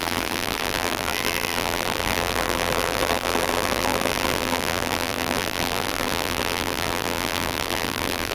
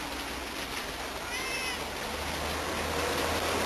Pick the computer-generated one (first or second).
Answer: first